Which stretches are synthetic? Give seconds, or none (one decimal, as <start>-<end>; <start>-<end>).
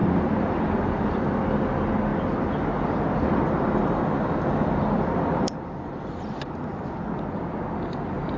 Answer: 0.0-1.5; 2.1-7.1